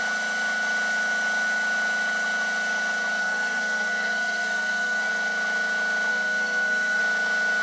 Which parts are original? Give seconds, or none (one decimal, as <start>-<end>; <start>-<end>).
0.0-3.2; 5.1-6.1; 7.0-7.6